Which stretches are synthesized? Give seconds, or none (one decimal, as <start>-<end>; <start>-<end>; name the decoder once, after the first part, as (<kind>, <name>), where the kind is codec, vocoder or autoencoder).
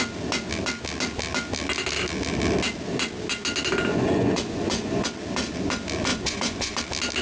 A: 3.9-5.1 (vocoder, Vocos); 6.1-6.8